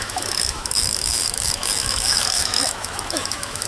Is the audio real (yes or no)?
no